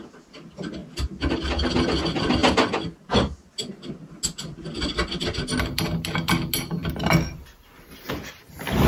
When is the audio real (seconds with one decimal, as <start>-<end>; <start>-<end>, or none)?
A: 0.0-8.9